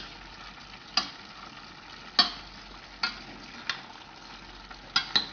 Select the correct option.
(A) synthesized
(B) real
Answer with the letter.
B